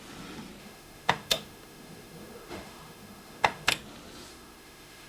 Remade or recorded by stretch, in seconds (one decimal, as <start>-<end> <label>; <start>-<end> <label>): 0.0-0.6 recorded; 0.6-3.7 remade; 3.7-4.3 recorded; 4.3-5.1 remade